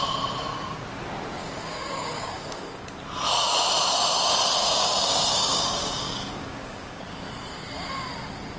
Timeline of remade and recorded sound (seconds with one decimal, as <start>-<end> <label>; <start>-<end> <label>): 0.0-1.4 recorded; 1.4-3.0 remade; 3.0-4.6 recorded; 4.6-7.0 remade; 7.0-8.6 recorded